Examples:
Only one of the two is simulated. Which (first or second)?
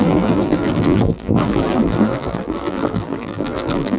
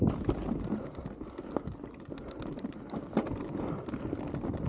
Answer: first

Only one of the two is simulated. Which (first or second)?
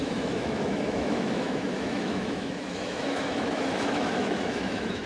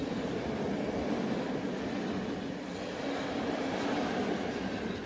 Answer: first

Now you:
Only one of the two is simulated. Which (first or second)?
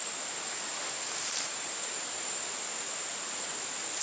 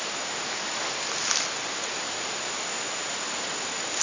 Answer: first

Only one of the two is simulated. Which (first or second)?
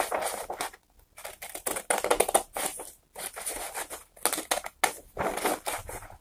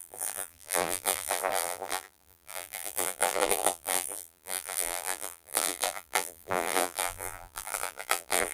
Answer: second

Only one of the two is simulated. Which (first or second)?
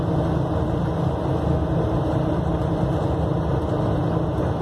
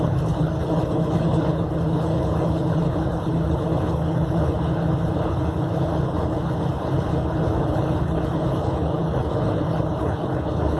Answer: second